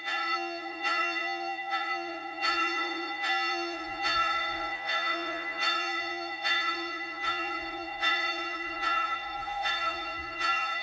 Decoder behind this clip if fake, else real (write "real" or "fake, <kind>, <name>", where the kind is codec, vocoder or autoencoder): fake, vocoder, Vocos